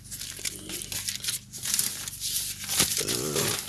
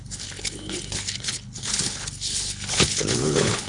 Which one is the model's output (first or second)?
second